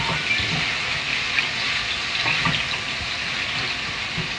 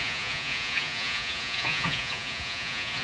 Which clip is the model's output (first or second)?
second